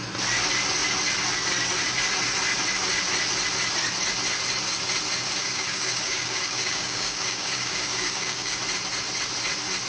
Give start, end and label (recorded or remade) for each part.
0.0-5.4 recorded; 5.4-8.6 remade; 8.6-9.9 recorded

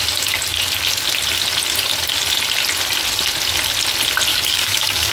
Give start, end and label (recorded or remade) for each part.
0.0-4.3 recorded; 4.3-5.1 remade